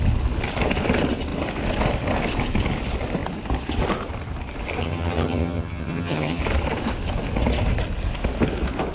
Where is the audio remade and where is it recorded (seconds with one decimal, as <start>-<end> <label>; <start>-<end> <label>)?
0.0-4.8 recorded; 4.8-6.4 remade; 6.4-8.9 recorded

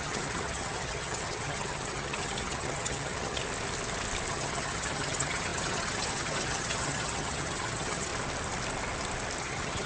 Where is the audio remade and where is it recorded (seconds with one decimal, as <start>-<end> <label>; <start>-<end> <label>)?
0.0-3.4 remade; 3.4-4.3 recorded; 4.3-8.1 remade; 8.1-9.4 recorded; 9.4-9.9 remade